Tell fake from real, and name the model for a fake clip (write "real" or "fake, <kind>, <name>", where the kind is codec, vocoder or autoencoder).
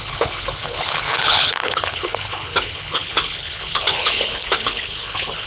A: fake, codec, HILCodec